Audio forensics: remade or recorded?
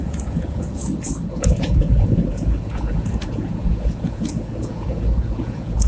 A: remade